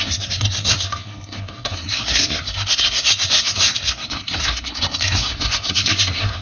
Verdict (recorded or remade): remade